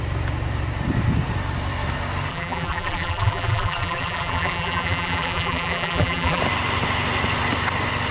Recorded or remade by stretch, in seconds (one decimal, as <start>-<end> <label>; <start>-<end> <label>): 0.0-2.3 recorded; 2.3-6.4 remade; 6.4-8.1 recorded